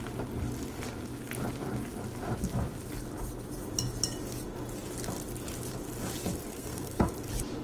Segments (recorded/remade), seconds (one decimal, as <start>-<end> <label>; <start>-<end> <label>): 0.0-6.5 recorded; 6.5-7.1 remade; 7.1-7.6 recorded